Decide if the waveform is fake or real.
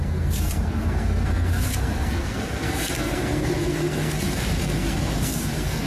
fake